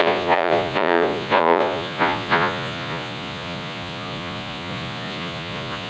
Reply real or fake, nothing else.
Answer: fake